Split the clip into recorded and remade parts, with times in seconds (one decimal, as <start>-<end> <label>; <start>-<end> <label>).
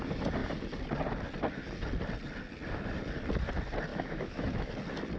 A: 0.0-3.9 recorded; 3.9-4.7 remade; 4.7-5.2 recorded